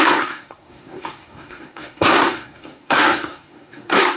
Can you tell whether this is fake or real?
fake